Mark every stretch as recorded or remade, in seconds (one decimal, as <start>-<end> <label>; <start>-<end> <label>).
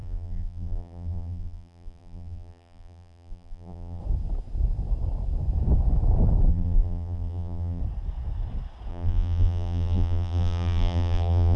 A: 0.0-4.0 remade; 4.0-6.5 recorded; 6.5-7.8 remade; 7.8-8.9 recorded; 8.9-11.6 remade